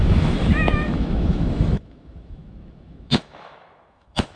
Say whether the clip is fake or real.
fake